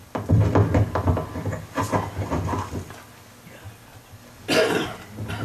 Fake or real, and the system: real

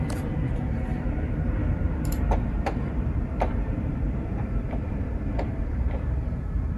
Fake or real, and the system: fake, vocoder, BigVGAN v2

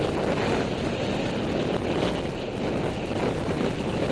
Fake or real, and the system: real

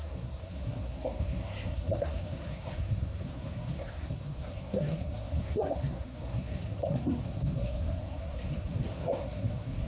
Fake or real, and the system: fake, codec, SNAC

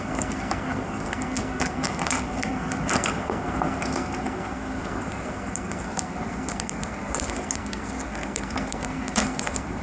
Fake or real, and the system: fake, codec, SNAC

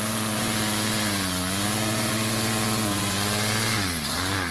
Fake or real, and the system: fake, vocoder, Vocos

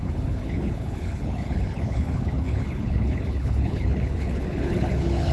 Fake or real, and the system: fake, codec, HILCodec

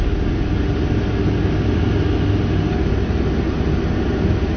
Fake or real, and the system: real